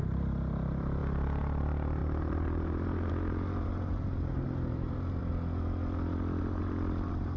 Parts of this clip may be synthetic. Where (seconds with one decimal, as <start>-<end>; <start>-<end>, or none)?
0.0-1.0; 1.6-5.2; 6.4-7.4